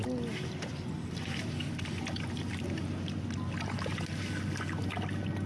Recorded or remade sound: recorded